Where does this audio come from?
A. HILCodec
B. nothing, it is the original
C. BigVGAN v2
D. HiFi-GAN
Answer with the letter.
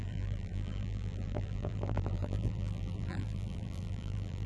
C